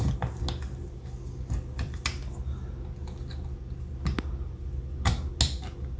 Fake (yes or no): no